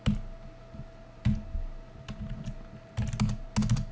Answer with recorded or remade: recorded